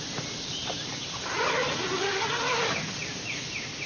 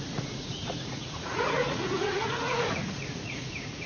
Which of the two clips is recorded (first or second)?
first